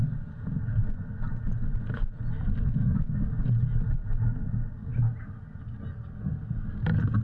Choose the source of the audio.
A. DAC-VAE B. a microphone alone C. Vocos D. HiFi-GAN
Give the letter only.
B